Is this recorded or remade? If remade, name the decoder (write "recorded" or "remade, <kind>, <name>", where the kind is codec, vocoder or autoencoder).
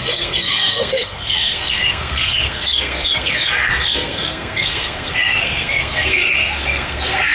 remade, codec, SNAC